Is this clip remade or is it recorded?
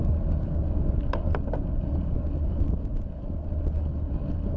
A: recorded